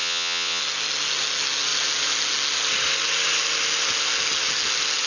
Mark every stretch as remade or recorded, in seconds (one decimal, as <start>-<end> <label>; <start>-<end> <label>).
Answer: 0.0-0.6 remade; 0.6-5.1 recorded